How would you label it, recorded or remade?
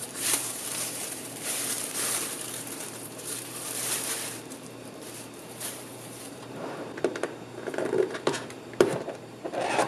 remade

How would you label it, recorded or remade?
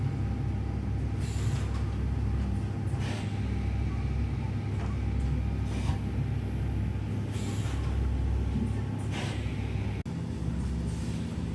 recorded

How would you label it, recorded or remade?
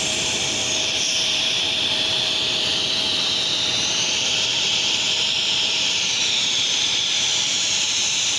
remade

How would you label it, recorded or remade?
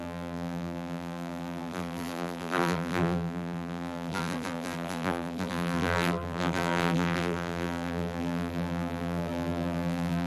remade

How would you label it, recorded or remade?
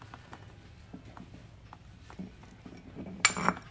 recorded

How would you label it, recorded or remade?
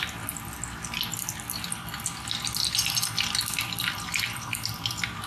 recorded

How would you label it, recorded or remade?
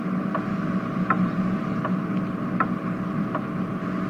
recorded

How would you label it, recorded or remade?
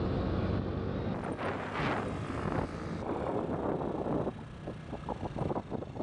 recorded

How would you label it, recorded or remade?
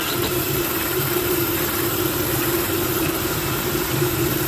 remade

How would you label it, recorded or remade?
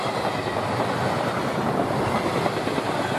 recorded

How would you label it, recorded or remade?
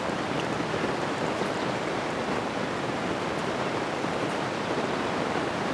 remade